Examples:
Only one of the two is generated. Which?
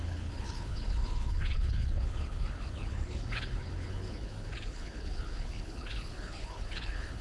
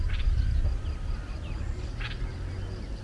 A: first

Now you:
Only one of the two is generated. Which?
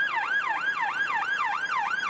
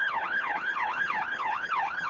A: second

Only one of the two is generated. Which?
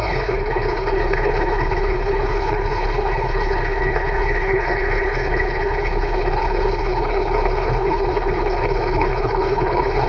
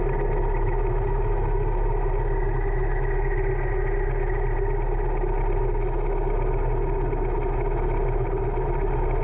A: first